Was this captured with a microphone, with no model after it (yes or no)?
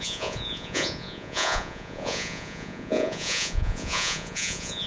no